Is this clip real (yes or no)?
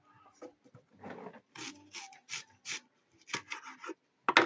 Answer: yes